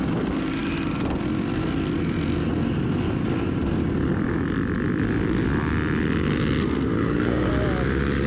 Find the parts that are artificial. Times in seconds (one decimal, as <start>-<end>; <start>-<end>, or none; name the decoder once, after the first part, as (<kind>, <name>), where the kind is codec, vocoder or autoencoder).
6.6-7.5 (codec, SNAC)